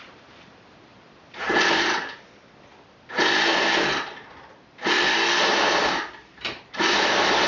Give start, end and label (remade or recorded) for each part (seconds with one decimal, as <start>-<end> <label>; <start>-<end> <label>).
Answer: 0.0-0.9 remade; 0.9-5.4 recorded; 5.4-7.5 remade